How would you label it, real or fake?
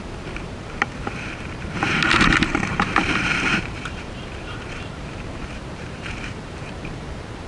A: fake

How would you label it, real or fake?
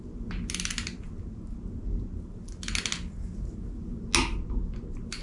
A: real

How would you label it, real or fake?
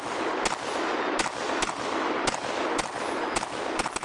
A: real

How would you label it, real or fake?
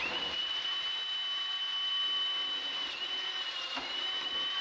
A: fake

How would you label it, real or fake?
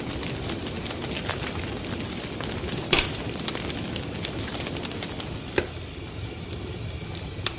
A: real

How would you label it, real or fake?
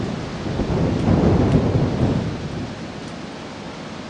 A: real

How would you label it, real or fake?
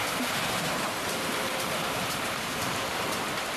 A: fake